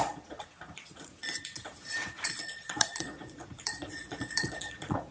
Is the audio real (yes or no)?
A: no